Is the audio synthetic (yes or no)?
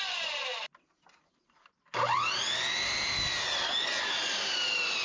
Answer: no